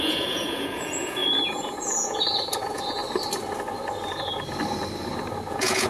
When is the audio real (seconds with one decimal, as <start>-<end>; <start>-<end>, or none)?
3.0-5.5